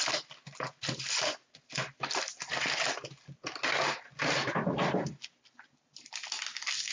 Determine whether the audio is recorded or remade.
recorded